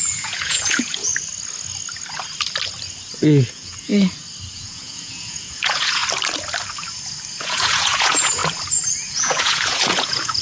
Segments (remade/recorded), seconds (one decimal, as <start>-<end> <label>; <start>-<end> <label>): 0.0-1.1 remade; 1.1-3.5 recorded; 3.5-3.9 remade; 3.9-4.5 recorded; 4.5-6.0 remade; 6.0-7.4 recorded; 7.4-8.4 remade; 8.4-9.1 recorded; 9.1-10.4 remade